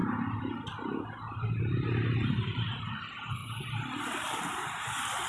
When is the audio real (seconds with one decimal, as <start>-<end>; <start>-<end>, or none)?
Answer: 0.0-1.6; 3.4-4.0